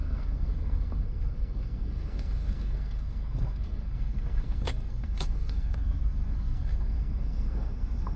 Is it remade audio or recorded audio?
remade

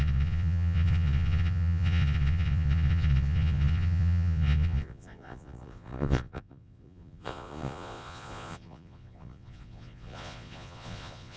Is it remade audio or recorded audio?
remade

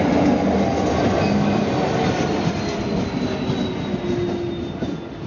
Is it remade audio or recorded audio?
recorded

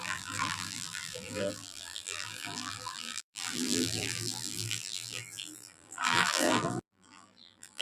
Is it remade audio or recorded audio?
remade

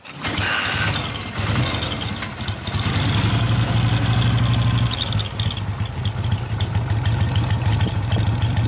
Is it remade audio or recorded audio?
recorded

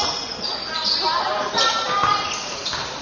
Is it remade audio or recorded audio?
recorded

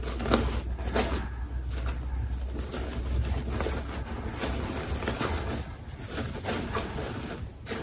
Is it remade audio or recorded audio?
recorded